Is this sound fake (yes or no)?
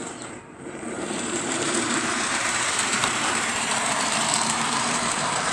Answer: yes